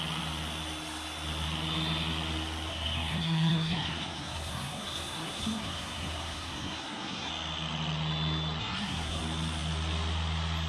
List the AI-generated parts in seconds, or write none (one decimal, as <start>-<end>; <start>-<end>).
2.7-7.3; 8.6-9.2